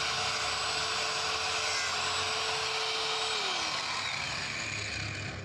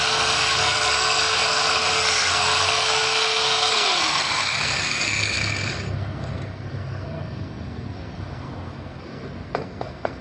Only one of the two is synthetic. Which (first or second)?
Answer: second